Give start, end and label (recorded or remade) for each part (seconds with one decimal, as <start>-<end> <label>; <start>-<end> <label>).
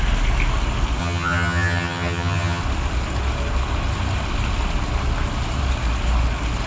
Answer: 0.0-1.0 recorded; 1.0-2.6 remade; 2.6-6.7 recorded